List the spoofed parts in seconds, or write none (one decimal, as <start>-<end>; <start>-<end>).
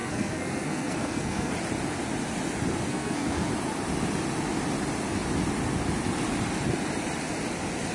0.0-1.5; 2.9-3.5